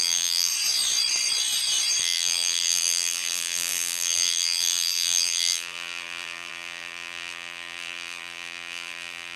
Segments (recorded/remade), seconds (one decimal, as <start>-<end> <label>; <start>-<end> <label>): 0.0-0.5 remade; 0.5-2.0 recorded; 2.0-9.4 remade

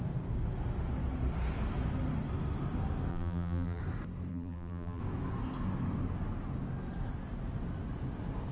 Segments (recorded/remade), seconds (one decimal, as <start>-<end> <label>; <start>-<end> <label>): 0.0-3.1 recorded; 3.1-3.8 remade; 3.8-4.3 recorded; 4.3-5.0 remade; 5.0-8.5 recorded

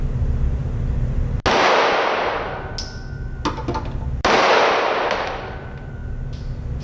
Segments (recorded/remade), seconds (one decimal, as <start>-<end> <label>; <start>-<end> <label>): 0.0-6.8 recorded

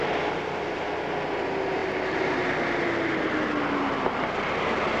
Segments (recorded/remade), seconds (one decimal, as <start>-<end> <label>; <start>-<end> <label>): 0.0-5.0 recorded

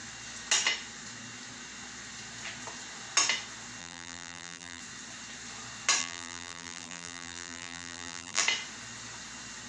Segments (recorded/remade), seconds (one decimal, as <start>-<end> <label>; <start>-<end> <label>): 0.0-3.8 recorded; 3.8-4.8 remade; 4.8-6.0 recorded; 6.0-8.4 remade; 8.4-9.7 recorded

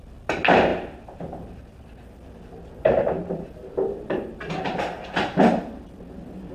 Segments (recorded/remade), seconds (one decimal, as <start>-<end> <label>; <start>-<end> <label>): 0.0-6.5 recorded

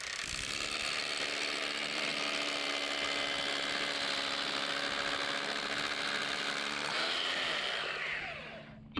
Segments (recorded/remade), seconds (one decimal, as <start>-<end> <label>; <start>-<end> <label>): 0.0-2.1 remade; 2.1-6.2 recorded; 6.2-9.0 remade